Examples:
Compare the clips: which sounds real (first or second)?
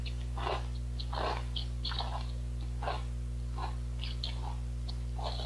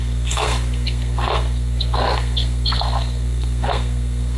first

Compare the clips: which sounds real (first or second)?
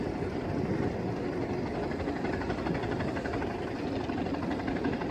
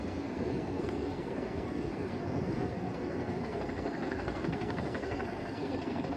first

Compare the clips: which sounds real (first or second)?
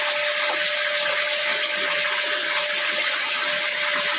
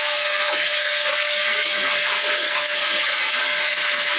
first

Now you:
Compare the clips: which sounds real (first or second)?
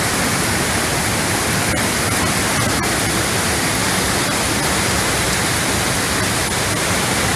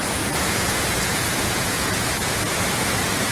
first